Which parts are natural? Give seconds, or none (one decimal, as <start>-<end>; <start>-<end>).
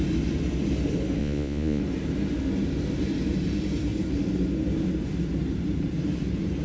0.0-1.2; 1.8-6.6